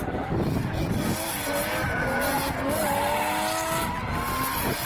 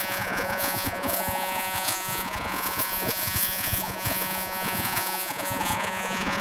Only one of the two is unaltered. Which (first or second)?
first